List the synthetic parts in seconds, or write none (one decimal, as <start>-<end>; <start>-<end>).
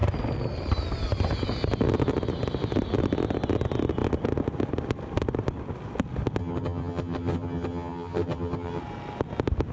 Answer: 6.4-8.8